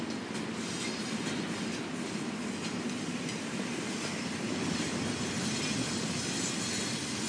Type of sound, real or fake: real